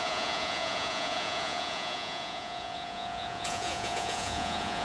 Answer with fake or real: fake